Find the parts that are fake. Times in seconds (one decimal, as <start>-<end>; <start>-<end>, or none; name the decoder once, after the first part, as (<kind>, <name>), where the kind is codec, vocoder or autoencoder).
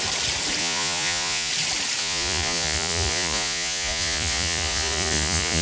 0.6-1.5 (vocoder, Vocos); 2.0-5.6